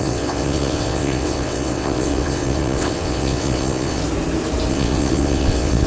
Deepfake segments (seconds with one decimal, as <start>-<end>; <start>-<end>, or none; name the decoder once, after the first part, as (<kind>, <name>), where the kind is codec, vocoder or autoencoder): 0.0-4.0 (vocoder, WaveNeXt); 4.7-5.9